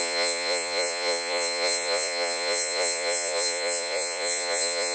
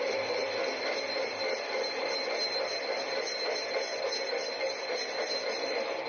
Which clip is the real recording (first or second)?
second